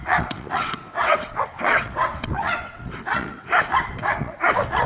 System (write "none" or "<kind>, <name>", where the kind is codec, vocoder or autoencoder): vocoder, WaveNeXt